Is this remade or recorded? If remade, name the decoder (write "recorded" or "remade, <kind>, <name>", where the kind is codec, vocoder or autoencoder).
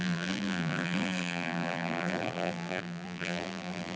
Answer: remade, vocoder, BigVGAN v2